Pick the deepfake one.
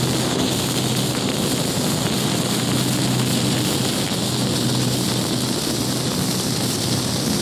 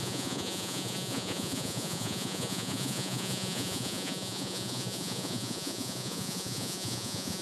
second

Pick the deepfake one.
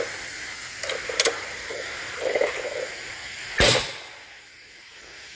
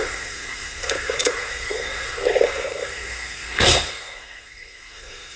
second